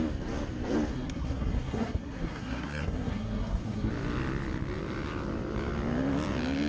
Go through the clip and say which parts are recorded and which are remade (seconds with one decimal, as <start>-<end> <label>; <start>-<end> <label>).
0.0-0.9 recorded; 0.9-3.9 remade; 3.9-6.7 recorded